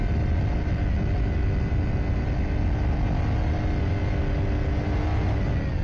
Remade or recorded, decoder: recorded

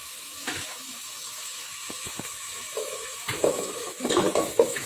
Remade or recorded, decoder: remade, autoencoder, DAC-VAE